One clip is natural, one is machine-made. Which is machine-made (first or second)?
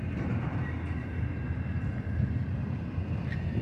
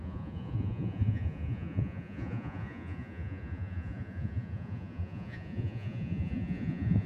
second